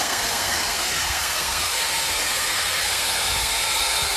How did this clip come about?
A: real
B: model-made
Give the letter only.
B